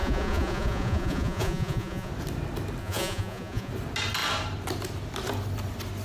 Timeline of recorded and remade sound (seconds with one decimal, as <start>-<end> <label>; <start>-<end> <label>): 0.0-2.1 remade; 2.1-2.8 recorded; 2.8-3.7 remade; 3.7-6.0 recorded